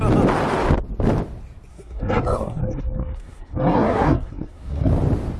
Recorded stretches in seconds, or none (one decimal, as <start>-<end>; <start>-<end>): 0.0-1.7; 4.9-5.4